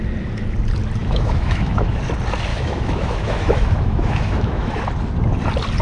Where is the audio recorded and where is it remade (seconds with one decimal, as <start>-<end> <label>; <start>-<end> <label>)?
0.0-1.0 recorded; 1.0-2.0 remade; 2.0-2.5 recorded; 2.5-4.8 remade; 4.8-5.8 recorded